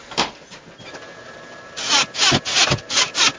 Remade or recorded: recorded